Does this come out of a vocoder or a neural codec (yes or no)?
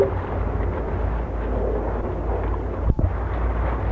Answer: no